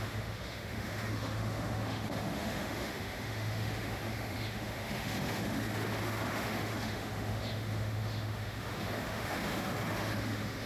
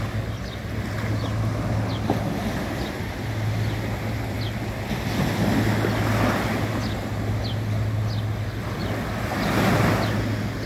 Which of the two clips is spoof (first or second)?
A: first